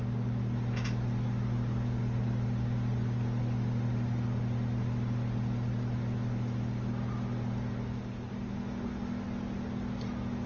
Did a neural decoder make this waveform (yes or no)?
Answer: no